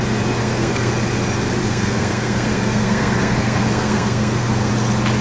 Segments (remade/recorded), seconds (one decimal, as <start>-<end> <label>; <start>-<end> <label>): 0.0-0.4 recorded; 0.4-0.9 remade; 0.9-1.6 recorded; 1.6-4.7 remade; 4.7-5.2 recorded